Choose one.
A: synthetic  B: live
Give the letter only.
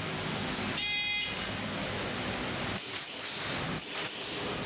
A